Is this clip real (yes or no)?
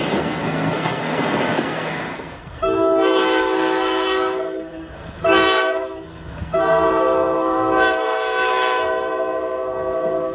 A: no